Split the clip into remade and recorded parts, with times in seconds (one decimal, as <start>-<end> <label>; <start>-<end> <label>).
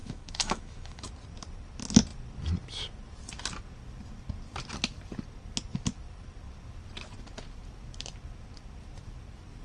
0.0-1.1 remade; 1.1-9.6 recorded